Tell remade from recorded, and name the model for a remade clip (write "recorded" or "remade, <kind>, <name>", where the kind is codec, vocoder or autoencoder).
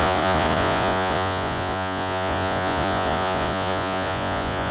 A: remade, vocoder, Vocos